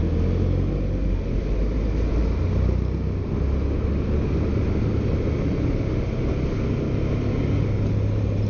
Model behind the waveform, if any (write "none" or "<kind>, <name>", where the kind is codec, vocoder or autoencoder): none